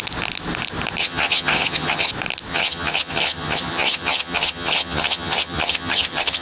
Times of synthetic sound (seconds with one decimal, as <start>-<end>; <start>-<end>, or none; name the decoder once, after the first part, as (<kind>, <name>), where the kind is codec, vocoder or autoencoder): 1.0-2.1 (vocoder, HiFi-GAN); 2.5-6.4